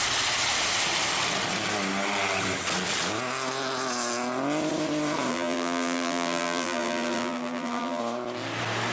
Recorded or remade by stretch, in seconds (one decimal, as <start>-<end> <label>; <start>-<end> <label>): 0.0-5.3 recorded; 5.3-8.0 remade; 8.0-8.9 recorded